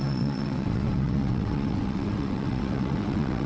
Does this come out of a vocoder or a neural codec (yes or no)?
yes